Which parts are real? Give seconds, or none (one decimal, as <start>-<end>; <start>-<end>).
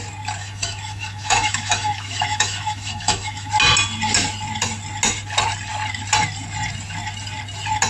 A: 0.0-0.4; 3.5-7.9